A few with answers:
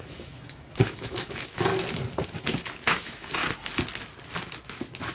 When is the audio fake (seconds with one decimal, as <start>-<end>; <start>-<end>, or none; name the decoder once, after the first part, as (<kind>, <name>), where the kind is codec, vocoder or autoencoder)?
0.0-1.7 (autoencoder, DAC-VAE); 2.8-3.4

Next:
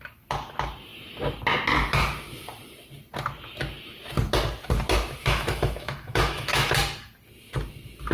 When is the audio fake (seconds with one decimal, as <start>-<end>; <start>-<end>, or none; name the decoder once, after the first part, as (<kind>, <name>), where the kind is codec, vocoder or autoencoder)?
5.2-6.7 (autoencoder, DAC-VAE)

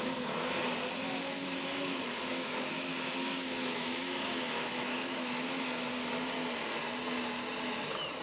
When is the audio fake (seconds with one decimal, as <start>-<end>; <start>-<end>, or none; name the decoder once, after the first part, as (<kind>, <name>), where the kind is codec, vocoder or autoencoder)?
1.3-5.9 (autoencoder, DAC-VAE)